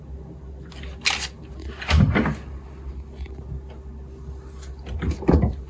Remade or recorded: recorded